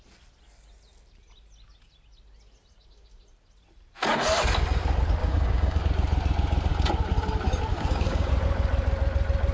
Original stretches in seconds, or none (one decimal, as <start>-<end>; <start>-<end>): 0.0-5.2; 5.8-7.7; 8.3-9.5